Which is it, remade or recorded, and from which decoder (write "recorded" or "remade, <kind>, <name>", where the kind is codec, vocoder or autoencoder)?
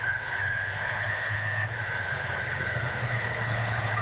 remade, codec, HILCodec